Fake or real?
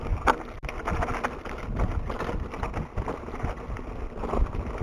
real